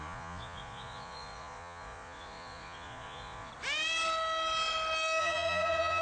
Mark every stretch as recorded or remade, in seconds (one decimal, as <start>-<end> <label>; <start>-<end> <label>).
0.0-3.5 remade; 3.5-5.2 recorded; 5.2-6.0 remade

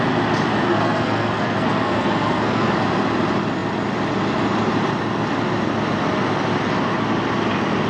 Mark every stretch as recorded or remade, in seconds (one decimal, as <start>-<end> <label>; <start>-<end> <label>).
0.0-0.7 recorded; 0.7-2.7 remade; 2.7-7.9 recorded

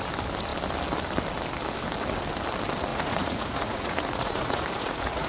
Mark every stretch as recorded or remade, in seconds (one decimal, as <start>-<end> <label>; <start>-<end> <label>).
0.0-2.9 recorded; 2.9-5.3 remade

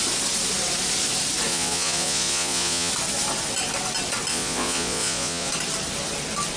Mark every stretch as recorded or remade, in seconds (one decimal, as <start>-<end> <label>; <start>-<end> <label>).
0.0-1.5 recorded; 1.5-2.9 remade; 2.9-4.3 recorded; 4.3-5.5 remade; 5.5-6.6 recorded

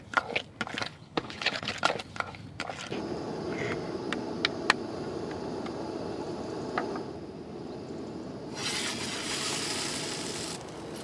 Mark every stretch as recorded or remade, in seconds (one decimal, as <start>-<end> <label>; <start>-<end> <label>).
0.0-0.9 recorded; 0.9-1.7 remade; 1.7-11.0 recorded